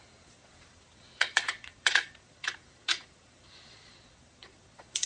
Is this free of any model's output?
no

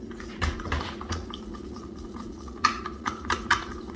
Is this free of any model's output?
no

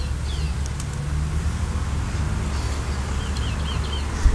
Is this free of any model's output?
yes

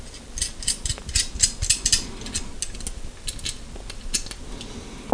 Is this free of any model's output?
yes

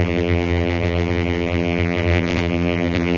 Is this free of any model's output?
no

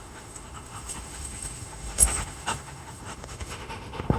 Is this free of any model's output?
no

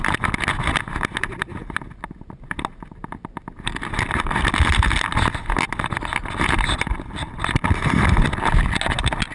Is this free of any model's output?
yes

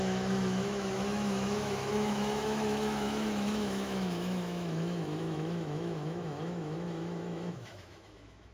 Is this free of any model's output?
no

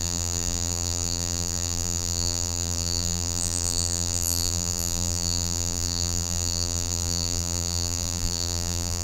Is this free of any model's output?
no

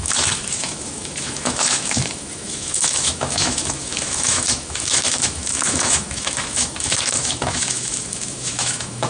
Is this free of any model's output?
no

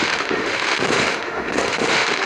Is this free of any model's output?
no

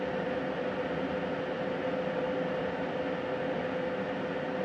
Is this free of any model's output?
yes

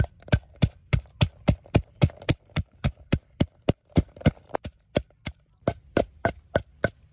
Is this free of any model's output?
yes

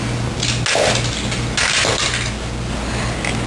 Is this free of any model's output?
yes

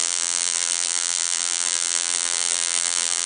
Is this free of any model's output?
no